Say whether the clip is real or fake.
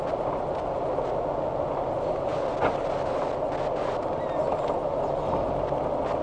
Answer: real